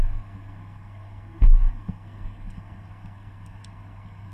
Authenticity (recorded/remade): remade